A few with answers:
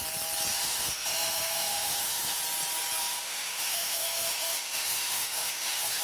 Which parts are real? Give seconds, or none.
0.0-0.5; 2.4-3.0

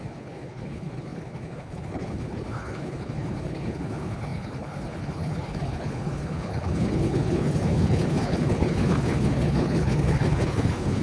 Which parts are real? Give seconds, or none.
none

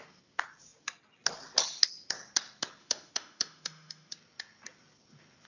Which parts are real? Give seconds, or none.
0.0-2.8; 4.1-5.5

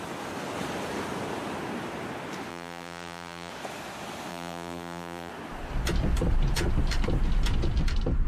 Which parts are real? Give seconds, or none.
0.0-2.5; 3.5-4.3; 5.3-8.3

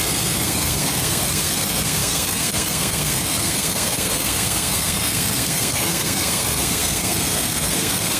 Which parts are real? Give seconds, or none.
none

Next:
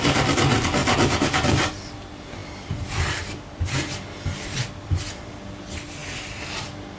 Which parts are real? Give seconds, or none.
0.0-7.0